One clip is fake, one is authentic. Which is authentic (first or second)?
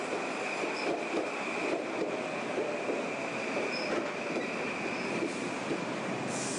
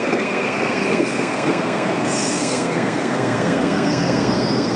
first